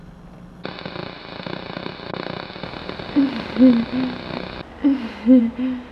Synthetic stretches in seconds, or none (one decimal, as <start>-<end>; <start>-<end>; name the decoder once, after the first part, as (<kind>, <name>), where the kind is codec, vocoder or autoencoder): none